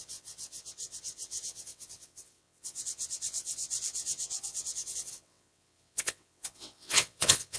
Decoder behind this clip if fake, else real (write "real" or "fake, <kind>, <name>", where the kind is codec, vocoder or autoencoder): fake, vocoder, WaveNeXt